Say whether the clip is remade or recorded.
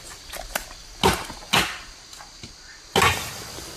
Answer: recorded